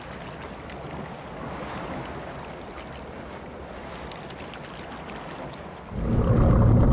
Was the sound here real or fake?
real